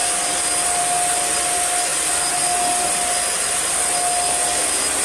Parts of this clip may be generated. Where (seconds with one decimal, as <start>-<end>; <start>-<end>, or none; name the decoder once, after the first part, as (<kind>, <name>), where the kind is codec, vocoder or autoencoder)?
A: none